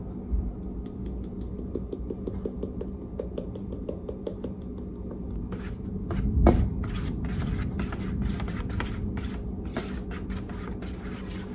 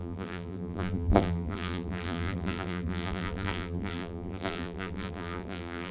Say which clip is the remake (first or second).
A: second